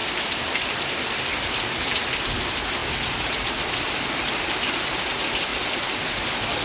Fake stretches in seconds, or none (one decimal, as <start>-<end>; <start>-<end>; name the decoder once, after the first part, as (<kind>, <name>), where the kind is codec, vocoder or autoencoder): 0.0-2.8 (vocoder, BigVGAN v2); 4.0-5.5; 6.1-6.6